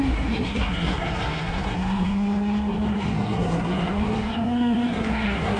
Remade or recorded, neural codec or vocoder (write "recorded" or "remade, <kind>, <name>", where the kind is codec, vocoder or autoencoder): remade, codec, SNAC